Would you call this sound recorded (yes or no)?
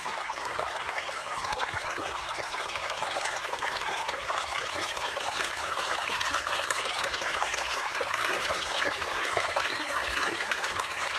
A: no